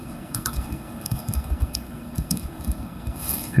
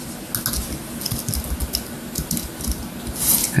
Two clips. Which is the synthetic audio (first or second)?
first